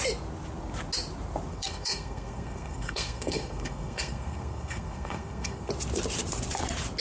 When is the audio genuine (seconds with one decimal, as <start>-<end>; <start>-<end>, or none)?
0.0-1.5; 5.7-7.0